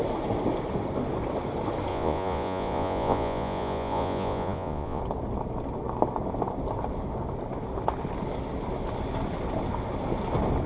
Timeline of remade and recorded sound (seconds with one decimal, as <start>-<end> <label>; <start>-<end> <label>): 0.0-1.9 recorded; 1.9-5.0 remade; 5.0-10.7 recorded